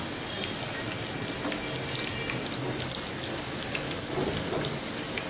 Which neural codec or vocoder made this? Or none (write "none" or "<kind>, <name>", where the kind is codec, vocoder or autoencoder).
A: none